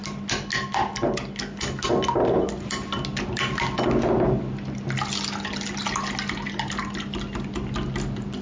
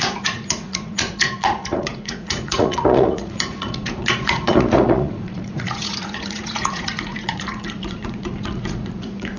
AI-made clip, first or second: second